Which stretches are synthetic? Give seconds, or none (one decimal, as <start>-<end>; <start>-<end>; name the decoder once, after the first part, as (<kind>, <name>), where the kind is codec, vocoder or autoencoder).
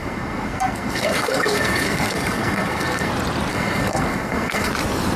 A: 0.0-3.1 (codec, SNAC); 3.5-4.7